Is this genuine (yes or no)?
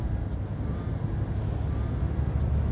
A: yes